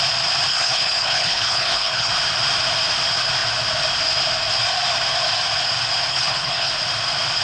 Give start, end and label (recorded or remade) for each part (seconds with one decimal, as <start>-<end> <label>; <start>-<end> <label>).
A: 0.0-0.5 recorded; 0.5-2.1 remade; 2.1-6.1 recorded; 6.1-6.7 remade; 6.7-7.4 recorded

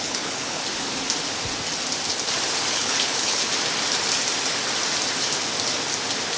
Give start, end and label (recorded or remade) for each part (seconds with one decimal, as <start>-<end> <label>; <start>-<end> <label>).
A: 0.0-0.6 remade; 0.6-2.7 recorded; 2.7-3.5 remade; 3.5-6.4 recorded

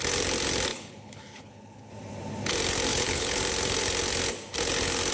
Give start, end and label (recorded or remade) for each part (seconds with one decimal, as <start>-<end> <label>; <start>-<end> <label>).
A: 0.0-0.7 recorded; 0.7-1.9 remade; 1.9-2.9 recorded; 2.9-3.4 remade; 3.4-5.1 recorded

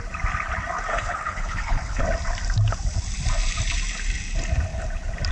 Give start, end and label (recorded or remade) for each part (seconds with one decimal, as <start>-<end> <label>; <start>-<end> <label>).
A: 0.0-0.9 recorded; 0.9-2.0 remade; 2.0-5.3 recorded